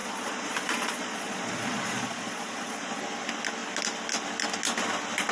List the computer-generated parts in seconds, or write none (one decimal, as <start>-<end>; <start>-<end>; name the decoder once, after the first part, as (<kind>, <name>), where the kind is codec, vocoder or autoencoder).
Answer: 0.0-3.0 (vocoder, Vocos)